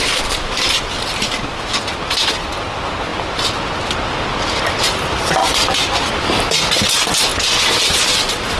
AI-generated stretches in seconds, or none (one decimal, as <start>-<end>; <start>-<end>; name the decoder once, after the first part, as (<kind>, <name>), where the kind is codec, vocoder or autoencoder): 0.0-0.5 (vocoder, BigVGAN v2); 5.4-6.1